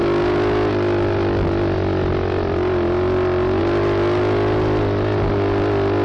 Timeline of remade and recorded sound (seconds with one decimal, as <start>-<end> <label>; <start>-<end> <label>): 0.0-6.0 recorded